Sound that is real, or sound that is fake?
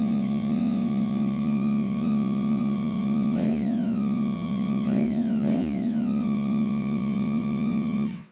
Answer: fake